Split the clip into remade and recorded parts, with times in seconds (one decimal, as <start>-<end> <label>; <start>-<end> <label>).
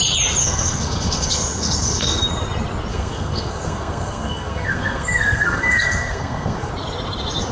0.0-0.4 recorded; 0.4-2.2 remade; 2.2-2.9 recorded; 2.9-6.7 remade; 6.7-7.5 recorded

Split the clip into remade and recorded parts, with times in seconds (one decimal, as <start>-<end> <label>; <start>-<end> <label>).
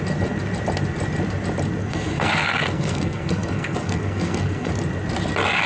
0.0-1.8 recorded; 1.8-4.7 remade; 4.7-5.7 recorded